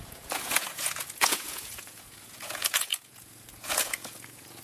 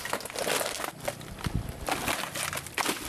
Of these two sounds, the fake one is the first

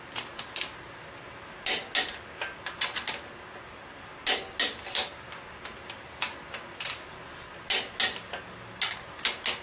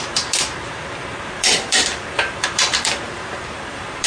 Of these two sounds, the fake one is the second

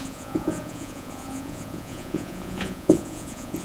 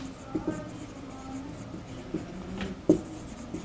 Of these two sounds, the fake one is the first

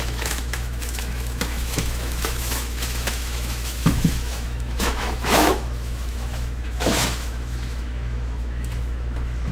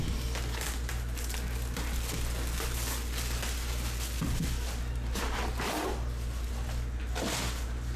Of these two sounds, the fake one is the first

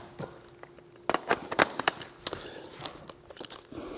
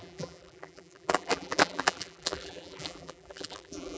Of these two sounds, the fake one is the second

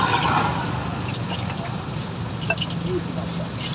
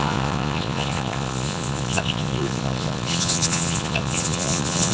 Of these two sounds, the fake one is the second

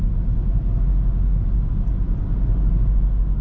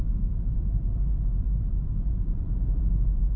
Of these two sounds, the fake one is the second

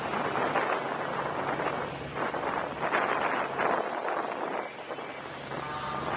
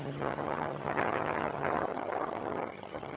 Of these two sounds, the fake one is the second